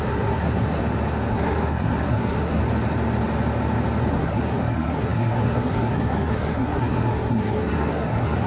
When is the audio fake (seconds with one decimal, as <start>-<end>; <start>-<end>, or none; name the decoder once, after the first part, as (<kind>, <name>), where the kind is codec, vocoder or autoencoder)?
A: 0.0-0.8 (codec, SNAC); 1.3-2.6; 4.1-8.5